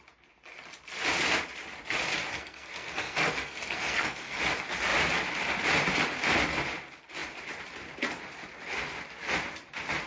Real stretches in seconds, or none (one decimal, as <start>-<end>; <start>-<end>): 0.0-2.3; 4.4-10.1